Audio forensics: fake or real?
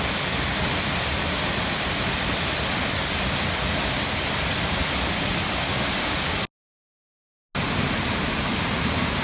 real